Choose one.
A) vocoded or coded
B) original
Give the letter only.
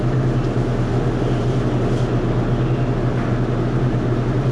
B